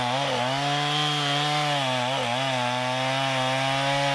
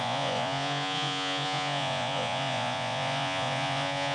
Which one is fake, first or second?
second